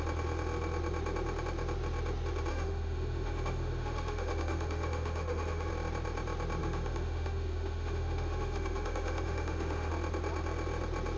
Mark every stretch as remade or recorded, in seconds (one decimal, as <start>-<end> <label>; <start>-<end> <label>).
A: 0.0-2.5 recorded; 2.5-5.7 remade; 5.7-6.6 recorded; 6.6-9.9 remade; 9.9-11.2 recorded